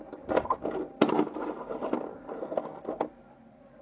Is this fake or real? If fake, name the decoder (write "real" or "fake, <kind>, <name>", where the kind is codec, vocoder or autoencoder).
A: real